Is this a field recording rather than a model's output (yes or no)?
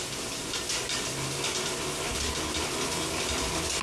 yes